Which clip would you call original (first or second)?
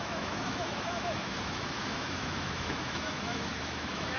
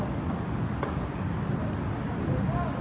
second